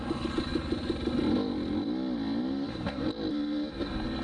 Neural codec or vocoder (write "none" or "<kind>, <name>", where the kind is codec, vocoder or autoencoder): none